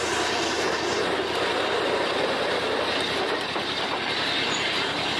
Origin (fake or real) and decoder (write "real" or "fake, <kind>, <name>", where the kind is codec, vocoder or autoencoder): real